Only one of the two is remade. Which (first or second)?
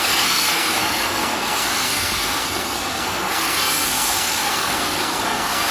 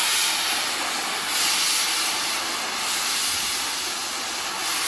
first